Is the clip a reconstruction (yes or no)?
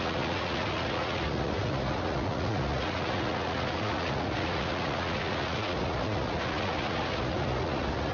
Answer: yes